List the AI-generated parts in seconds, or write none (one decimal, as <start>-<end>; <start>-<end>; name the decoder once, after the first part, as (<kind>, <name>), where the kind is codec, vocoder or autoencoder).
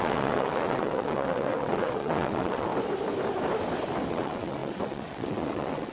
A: 0.0-2.7 (vocoder, WaveNeXt); 4.1-5.9